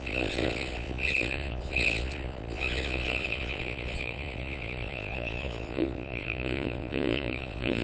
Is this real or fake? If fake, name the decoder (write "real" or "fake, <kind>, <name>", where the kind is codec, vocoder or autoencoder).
fake, vocoder, Vocos